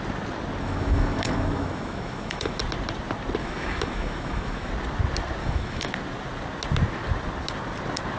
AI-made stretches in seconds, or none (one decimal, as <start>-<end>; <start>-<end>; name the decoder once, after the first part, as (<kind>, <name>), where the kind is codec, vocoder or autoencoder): 0.6-2.6 (autoencoder, DAC-VAE); 3.4-4.7; 5.4-5.9